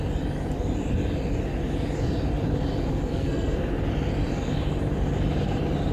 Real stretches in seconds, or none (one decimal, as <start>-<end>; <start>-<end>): 0.0-2.9; 3.7-5.9